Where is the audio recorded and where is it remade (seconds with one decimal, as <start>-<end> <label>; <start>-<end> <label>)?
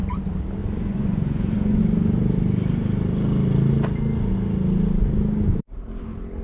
0.0-0.6 recorded; 0.6-1.8 remade; 1.8-6.4 recorded